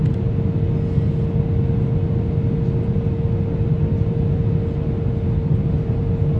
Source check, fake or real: real